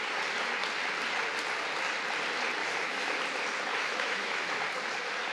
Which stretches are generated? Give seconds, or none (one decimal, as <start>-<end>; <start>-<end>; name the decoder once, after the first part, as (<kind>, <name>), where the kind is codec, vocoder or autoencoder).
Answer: 2.6-3.2 (autoencoder, DAC-VAE); 3.7-4.6